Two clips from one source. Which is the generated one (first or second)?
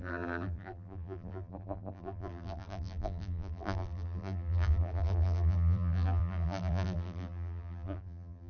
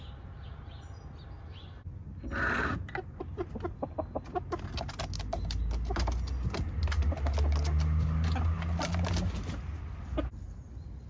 first